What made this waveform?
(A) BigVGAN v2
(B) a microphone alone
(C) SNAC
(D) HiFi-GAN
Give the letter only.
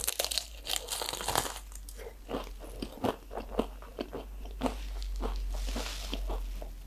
B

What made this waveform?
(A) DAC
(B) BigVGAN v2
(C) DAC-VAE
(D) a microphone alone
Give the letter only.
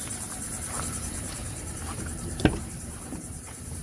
B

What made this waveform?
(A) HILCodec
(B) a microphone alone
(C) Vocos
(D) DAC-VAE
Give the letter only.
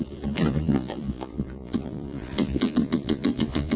C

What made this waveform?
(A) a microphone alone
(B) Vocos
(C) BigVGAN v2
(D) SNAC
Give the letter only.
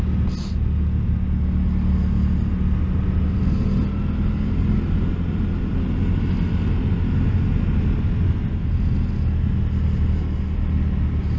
A